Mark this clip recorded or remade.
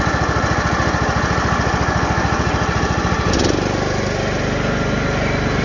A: recorded